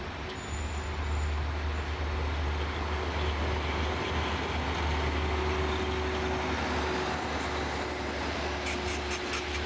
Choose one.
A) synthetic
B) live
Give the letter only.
B